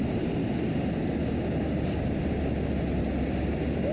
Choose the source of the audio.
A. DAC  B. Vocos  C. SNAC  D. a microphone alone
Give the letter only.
D